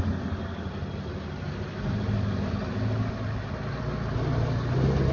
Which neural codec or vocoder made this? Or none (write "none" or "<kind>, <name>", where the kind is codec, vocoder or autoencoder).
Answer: none